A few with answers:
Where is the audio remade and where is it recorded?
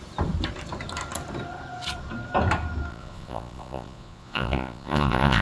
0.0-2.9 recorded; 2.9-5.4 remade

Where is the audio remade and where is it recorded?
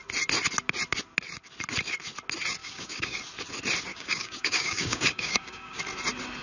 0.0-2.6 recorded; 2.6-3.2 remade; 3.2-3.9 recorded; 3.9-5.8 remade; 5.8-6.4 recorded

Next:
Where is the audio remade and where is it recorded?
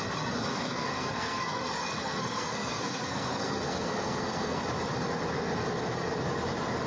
0.0-0.5 recorded; 0.5-4.6 remade; 4.6-6.9 recorded